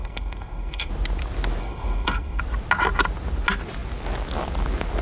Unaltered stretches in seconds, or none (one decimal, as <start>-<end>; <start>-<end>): 0.9-1.6; 2.4-5.0